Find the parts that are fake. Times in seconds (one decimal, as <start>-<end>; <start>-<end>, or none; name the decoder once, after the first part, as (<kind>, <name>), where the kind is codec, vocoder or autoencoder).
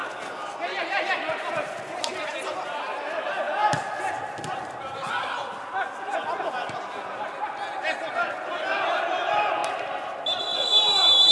none